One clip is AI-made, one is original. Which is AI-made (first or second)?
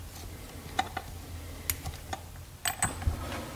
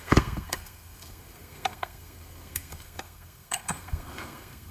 second